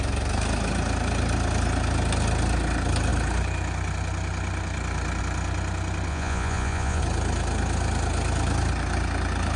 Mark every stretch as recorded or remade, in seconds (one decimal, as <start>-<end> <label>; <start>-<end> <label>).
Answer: 0.0-6.1 recorded; 6.1-7.0 remade; 7.0-9.6 recorded